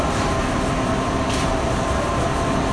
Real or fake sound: real